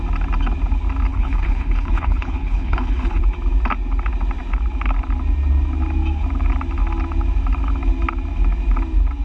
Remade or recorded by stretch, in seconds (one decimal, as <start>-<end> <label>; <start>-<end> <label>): 0.0-1.1 recorded; 1.1-3.2 remade; 3.2-9.2 recorded